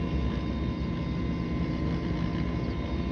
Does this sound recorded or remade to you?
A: recorded